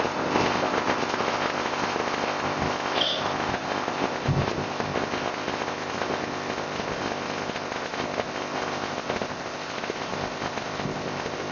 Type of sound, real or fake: fake